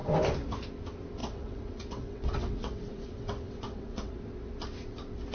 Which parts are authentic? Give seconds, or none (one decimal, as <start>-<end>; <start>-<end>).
0.0-1.2; 4.2-5.3